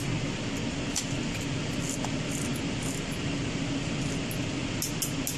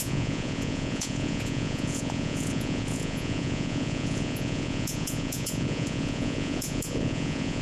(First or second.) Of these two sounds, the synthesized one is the second